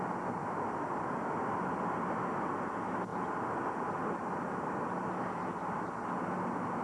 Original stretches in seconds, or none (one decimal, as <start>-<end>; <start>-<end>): 0.0-6.8